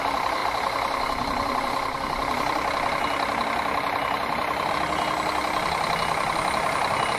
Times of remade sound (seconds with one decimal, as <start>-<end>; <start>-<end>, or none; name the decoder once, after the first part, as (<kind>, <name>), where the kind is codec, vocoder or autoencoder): none